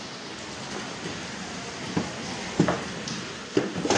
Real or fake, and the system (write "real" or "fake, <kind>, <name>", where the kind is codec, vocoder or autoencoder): real